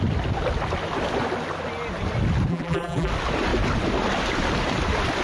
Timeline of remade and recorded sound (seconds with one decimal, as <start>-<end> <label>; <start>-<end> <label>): 0.0-2.5 recorded; 2.5-3.1 remade; 3.1-5.2 recorded